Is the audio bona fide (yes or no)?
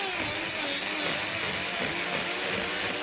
yes